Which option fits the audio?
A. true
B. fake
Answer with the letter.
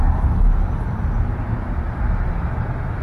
A